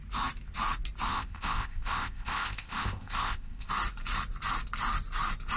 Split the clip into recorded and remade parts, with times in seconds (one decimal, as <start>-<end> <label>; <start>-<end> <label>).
0.0-1.1 recorded; 1.1-3.7 remade; 3.7-5.6 recorded